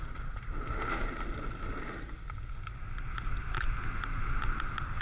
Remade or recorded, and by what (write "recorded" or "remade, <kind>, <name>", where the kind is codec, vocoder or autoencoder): recorded